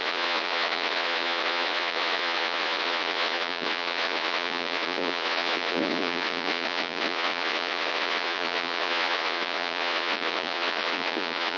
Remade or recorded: remade